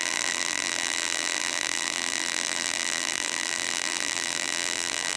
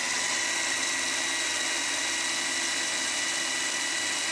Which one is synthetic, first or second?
first